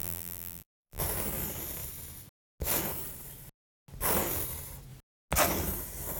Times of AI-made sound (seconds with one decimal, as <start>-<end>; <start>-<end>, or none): 0.0-1.0